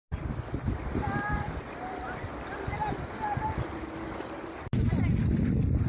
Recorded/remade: recorded